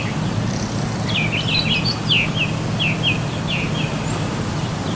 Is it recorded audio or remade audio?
recorded